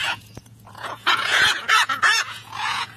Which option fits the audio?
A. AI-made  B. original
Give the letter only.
A